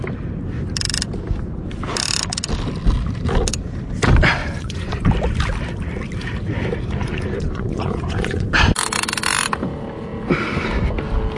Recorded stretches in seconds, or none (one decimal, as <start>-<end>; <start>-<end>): 0.0-4.4; 5.1-7.0; 8.5-11.4